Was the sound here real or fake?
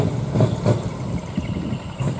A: real